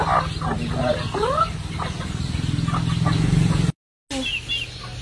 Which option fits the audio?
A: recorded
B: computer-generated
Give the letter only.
A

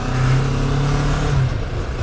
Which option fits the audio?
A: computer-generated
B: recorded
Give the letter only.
B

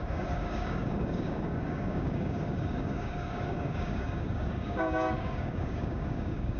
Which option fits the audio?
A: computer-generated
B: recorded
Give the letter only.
A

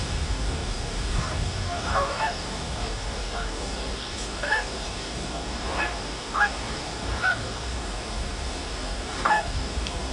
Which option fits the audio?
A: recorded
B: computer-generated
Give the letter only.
B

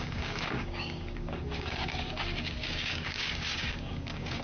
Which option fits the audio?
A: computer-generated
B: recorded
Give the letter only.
A